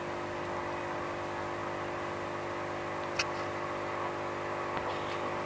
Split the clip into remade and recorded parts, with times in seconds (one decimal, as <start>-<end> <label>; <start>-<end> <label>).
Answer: 0.0-5.5 recorded